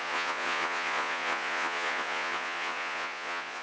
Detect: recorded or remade remade